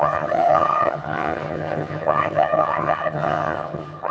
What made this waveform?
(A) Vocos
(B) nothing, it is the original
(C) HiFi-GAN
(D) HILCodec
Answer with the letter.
C